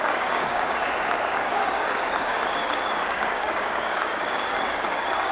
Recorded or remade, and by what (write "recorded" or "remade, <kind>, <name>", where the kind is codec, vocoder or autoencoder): remade, codec, DAC